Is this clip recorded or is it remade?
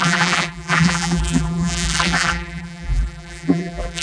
remade